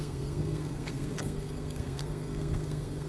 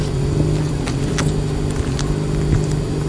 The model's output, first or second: first